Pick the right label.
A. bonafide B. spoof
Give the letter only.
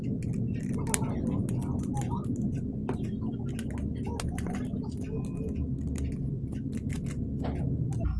A